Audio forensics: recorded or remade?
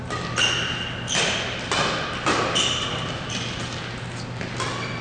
recorded